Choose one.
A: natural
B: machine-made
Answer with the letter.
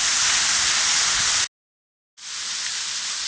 A